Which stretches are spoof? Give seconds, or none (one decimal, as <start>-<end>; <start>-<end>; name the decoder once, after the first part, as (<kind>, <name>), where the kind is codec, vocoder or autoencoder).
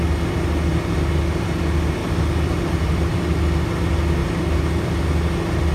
2.0-3.1 (vocoder, BigVGAN v2); 4.2-4.9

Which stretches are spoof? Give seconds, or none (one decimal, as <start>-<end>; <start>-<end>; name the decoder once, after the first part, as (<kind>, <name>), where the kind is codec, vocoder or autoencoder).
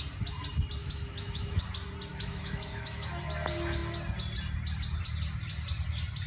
0.8-1.6 (autoencoder, DAC-VAE); 2.1-3.2